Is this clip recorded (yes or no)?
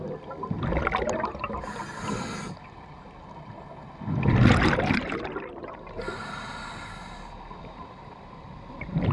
yes